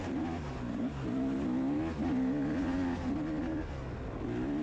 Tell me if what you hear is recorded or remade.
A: recorded